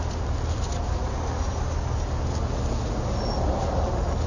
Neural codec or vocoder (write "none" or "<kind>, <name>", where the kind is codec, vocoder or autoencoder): none